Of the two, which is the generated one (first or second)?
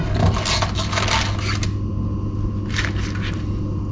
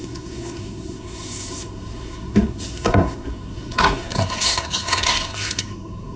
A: second